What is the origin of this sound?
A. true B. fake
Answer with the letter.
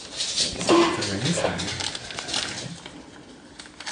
A